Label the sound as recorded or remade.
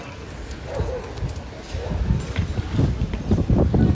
recorded